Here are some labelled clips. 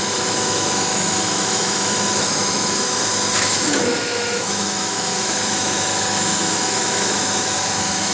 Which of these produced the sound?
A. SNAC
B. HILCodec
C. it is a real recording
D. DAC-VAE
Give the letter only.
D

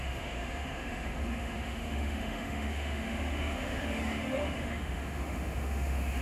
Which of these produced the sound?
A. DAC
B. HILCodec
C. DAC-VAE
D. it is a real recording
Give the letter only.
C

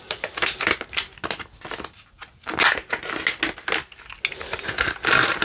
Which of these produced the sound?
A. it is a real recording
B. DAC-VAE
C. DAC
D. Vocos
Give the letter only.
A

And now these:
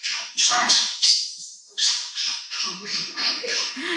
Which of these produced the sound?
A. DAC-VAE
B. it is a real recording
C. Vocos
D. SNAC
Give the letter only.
A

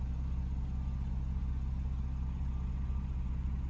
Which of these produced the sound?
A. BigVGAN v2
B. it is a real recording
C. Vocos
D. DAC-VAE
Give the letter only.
B